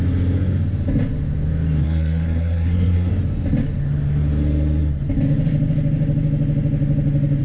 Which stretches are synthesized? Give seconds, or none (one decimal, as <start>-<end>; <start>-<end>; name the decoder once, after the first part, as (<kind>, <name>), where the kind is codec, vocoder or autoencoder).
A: 1.8-3.1 (codec, SNAC)